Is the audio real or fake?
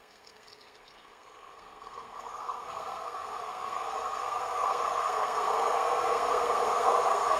fake